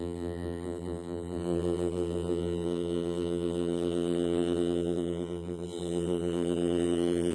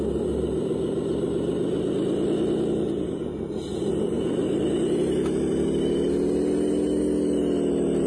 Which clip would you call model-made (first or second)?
first